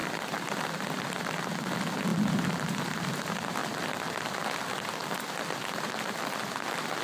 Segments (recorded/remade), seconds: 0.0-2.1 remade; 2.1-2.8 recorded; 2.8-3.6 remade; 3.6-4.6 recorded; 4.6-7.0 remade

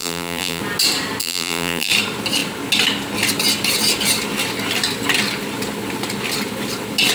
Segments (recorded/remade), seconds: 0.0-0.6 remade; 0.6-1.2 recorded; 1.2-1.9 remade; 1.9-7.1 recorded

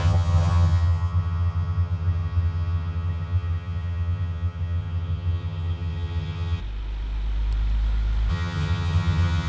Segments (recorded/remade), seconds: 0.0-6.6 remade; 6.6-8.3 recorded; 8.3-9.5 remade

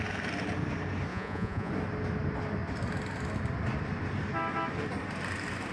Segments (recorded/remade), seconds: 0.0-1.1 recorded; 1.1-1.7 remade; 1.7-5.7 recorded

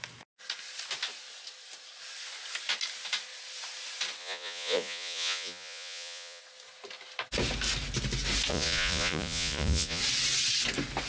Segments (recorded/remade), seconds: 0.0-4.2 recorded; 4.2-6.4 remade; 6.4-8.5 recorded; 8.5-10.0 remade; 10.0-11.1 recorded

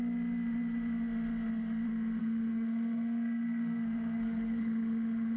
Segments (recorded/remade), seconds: 0.0-2.2 recorded; 2.2-5.4 remade